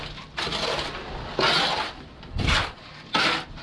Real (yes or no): yes